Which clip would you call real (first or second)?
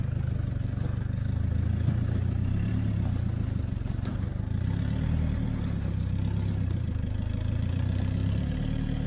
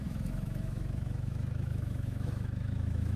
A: first